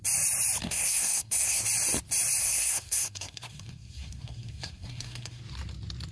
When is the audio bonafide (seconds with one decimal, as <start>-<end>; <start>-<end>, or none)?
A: 0.0-0.6; 1.6-2.4; 5.4-6.1